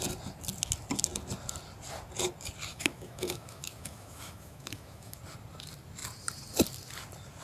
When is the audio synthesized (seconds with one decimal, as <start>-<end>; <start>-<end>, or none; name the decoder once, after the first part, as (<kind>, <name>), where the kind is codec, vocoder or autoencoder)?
2.7-5.2 (autoencoder, DAC-VAE)